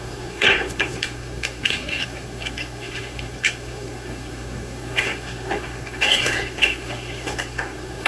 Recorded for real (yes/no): no